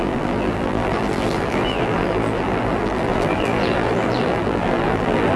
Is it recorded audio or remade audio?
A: remade